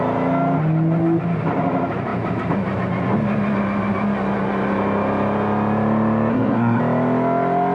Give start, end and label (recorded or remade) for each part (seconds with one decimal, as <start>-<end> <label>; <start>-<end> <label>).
0.0-6.3 recorded; 6.3-6.8 remade; 6.8-7.7 recorded